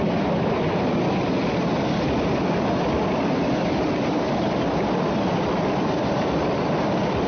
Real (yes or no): yes